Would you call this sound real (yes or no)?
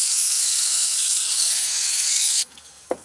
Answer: no